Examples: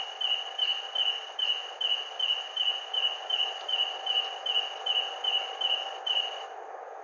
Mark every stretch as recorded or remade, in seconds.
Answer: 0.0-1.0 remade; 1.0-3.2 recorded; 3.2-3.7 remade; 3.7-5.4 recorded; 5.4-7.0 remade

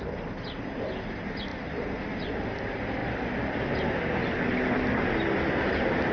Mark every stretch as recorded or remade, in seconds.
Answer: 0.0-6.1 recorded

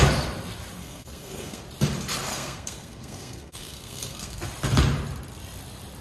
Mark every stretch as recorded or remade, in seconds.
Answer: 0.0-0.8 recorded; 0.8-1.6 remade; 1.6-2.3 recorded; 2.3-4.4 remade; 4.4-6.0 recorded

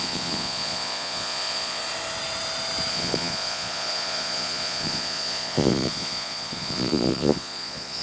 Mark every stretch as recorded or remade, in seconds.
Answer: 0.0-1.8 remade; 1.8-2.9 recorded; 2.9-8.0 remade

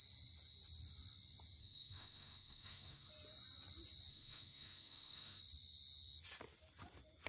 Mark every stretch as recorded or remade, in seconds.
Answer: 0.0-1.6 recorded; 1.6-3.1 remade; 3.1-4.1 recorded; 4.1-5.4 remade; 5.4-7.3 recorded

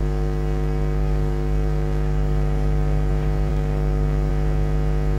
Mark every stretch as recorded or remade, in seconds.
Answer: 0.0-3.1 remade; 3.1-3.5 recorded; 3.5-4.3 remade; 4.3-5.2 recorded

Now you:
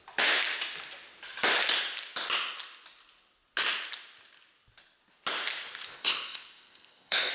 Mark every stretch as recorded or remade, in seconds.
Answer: 0.0-5.9 recorded; 5.9-7.3 remade